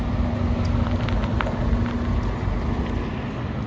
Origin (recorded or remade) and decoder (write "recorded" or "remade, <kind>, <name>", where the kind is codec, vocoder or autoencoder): recorded